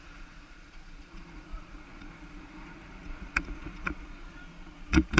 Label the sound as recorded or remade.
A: remade